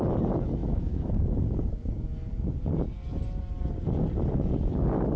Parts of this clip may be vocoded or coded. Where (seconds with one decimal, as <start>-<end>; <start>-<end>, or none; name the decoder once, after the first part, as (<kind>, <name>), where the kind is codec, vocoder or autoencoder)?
0.6-1.3 (autoencoder, DAC-VAE)